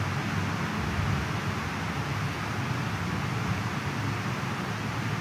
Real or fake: real